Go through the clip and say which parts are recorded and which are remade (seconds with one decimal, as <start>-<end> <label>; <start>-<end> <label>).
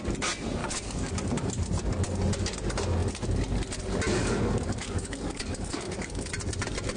0.0-0.6 recorded; 0.6-1.1 remade; 1.1-4.2 recorded; 4.2-6.3 remade; 6.3-7.0 recorded